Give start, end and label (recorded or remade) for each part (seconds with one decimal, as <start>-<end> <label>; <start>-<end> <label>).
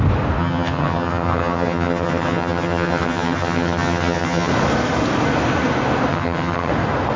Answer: 0.0-0.4 recorded; 0.4-4.5 remade; 4.5-6.1 recorded; 6.1-6.7 remade; 6.7-7.2 recorded